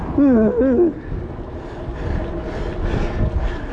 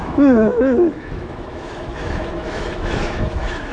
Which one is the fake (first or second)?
second